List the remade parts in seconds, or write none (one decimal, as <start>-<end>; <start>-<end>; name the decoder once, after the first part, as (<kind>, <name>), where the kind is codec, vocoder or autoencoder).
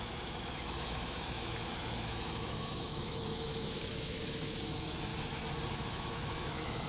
0.0-5.1 (autoencoder, DAC-VAE); 5.7-6.9